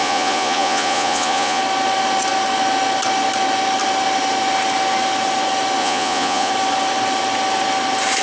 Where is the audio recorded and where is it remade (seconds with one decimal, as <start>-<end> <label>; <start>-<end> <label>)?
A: 0.0-1.6 remade; 1.6-5.8 recorded; 5.8-6.5 remade; 6.5-8.2 recorded